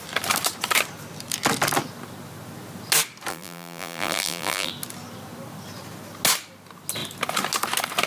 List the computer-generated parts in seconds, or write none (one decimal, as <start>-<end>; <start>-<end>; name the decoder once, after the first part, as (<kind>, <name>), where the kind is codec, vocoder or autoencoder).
3.3-4.7 (vocoder, BigVGAN v2)